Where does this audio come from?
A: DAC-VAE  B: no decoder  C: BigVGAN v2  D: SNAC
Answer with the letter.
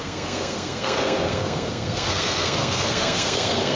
D